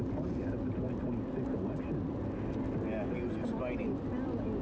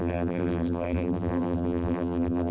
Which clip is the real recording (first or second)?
first